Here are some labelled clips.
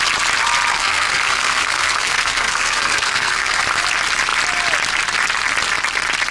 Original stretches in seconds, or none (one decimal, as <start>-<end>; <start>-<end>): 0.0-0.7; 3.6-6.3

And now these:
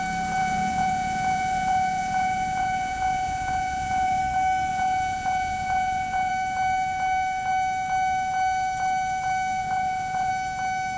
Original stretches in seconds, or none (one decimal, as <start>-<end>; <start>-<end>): 0.0-0.4; 4.2-4.7; 6.3-9.6; 10.3-11.0

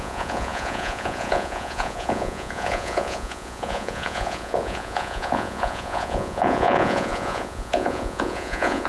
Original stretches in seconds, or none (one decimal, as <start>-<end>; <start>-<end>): none